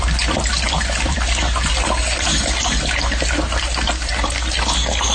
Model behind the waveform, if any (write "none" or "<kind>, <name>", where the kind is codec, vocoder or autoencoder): none